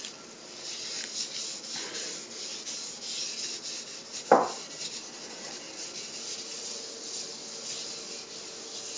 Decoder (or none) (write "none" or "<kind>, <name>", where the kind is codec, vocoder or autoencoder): none